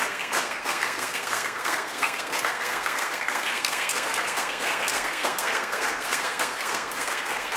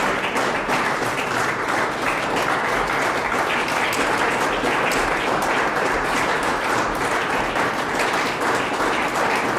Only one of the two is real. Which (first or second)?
second